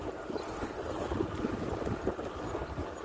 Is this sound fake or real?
real